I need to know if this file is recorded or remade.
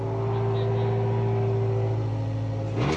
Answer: recorded